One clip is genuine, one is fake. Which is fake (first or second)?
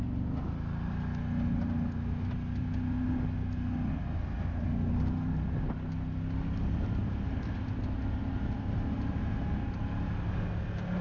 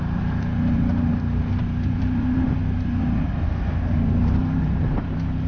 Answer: second